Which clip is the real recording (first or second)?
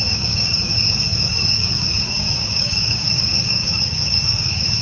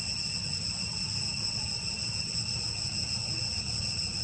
second